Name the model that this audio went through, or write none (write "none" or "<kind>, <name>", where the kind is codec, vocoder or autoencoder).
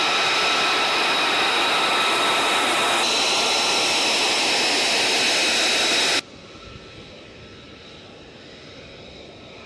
none